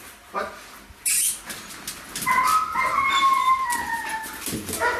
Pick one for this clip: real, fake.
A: real